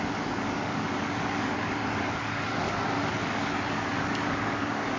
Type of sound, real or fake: fake